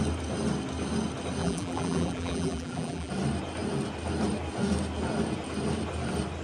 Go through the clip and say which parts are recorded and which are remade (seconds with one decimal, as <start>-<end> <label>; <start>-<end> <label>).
0.0-1.4 recorded; 1.4-3.1 remade; 3.1-6.4 recorded